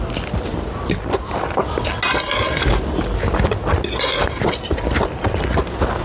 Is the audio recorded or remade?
recorded